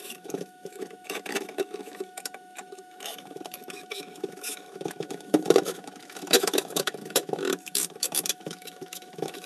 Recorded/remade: remade